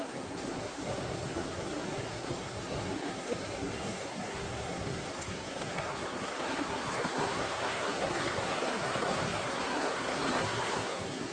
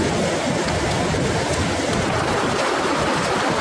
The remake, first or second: first